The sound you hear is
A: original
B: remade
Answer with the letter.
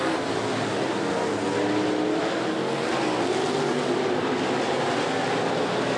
A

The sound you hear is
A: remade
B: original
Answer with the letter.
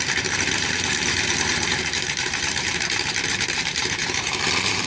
A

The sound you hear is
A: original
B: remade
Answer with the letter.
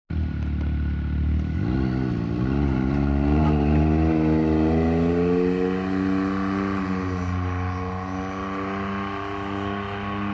A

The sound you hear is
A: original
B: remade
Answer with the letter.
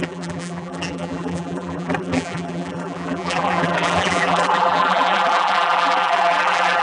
B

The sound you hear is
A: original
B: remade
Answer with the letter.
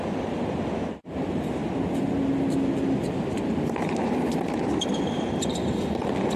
A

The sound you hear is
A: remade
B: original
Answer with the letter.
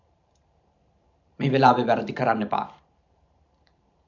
A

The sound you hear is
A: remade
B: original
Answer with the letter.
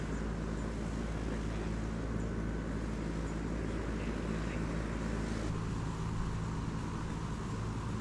B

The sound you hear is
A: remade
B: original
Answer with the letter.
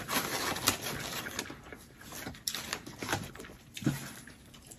B